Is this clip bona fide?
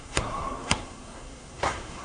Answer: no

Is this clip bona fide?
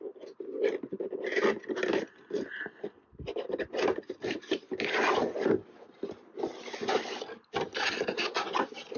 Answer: yes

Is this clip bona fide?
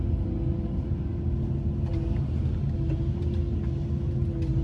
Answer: yes